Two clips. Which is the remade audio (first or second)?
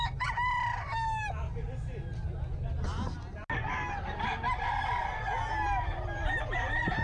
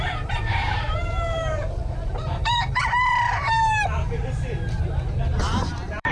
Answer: second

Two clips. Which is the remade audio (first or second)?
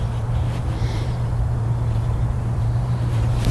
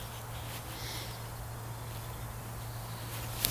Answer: first